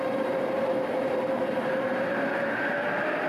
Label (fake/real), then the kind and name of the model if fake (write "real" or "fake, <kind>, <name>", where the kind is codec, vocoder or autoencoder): real